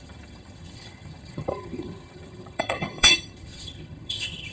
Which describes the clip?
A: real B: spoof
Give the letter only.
B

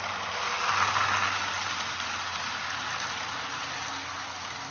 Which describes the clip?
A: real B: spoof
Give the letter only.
A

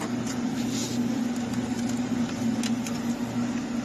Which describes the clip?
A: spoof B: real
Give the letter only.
B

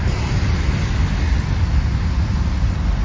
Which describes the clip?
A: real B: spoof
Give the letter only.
A